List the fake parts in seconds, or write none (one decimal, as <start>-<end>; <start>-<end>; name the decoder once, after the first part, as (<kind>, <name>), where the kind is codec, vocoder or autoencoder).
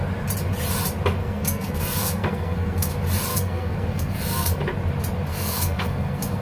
1.2-2.9 (codec, SNAC); 3.3-4.6; 5.3-6.4